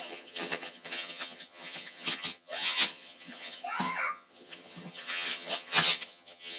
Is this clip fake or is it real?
fake